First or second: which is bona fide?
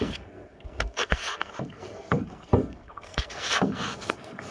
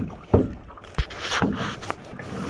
second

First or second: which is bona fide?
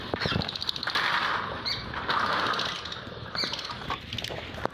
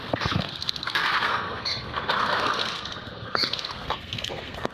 first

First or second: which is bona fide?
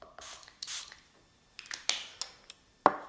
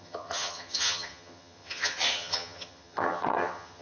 first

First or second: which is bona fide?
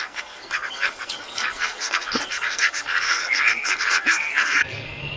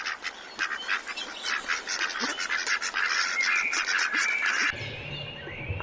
second